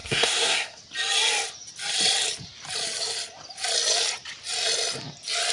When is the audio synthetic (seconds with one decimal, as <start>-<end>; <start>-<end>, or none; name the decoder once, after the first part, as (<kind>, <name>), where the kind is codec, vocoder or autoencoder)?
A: 0.0-0.8 (codec, SNAC)